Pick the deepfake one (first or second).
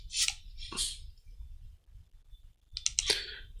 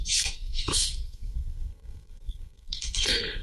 second